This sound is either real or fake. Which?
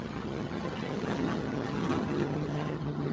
fake